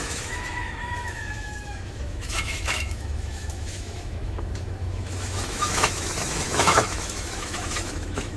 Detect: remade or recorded remade